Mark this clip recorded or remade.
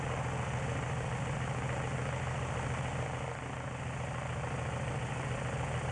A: recorded